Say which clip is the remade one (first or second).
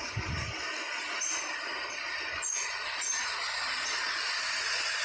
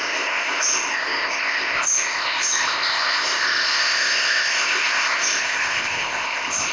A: second